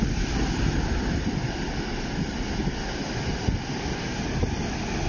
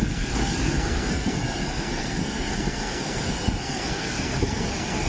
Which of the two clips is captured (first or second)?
first